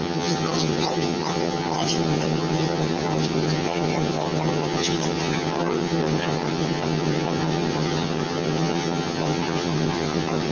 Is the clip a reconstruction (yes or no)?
yes